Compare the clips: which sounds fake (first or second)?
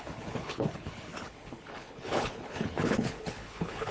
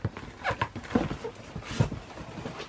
first